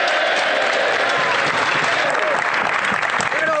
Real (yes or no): yes